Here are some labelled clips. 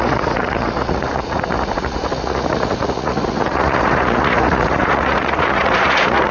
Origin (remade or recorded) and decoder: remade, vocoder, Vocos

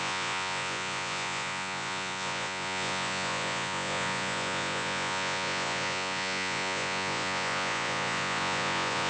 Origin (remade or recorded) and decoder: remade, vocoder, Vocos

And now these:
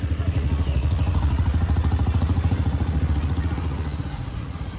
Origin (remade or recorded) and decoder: remade, vocoder, Vocos